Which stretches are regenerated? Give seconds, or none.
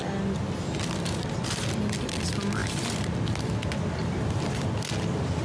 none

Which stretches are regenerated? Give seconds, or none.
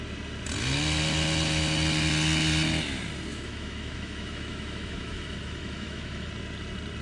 3.3-6.3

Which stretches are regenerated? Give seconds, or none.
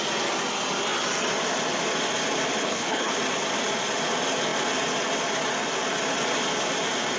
2.6-3.1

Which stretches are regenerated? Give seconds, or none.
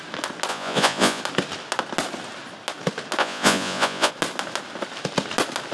0.5-1.2; 3.2-4.1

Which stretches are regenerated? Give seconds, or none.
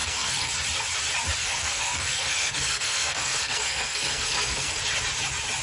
0.0-0.5; 1.4-4.8